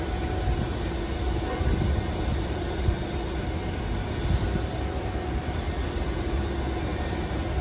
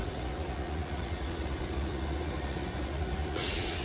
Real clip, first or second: first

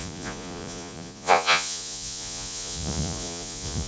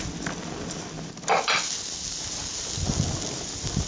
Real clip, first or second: second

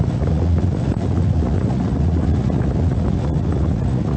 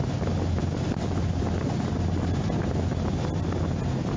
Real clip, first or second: second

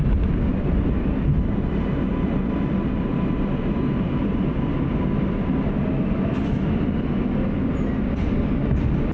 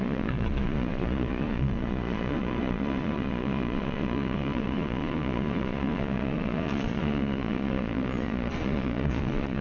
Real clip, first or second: first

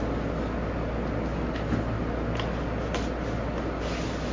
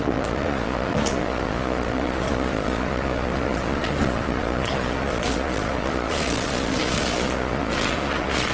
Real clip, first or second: first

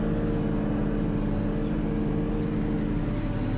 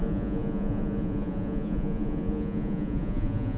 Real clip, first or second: first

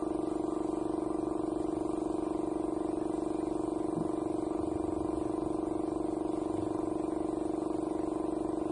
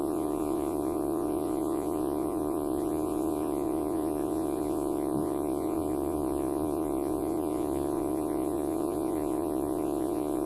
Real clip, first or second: first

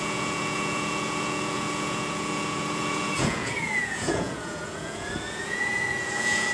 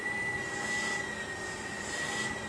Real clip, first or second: second